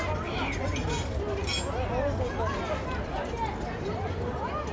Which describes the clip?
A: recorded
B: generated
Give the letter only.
A